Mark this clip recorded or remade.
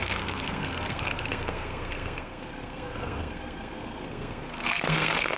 remade